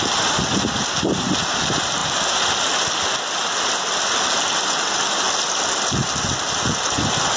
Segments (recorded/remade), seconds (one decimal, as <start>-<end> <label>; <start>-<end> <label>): 0.0-7.4 recorded